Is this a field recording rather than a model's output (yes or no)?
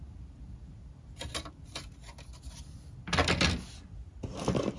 yes